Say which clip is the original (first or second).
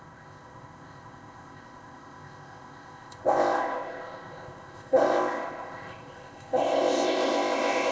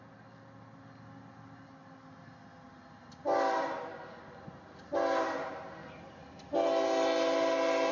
second